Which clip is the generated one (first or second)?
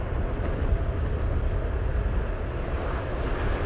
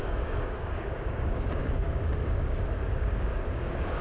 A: second